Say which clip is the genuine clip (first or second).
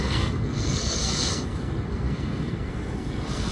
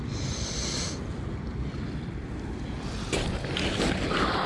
second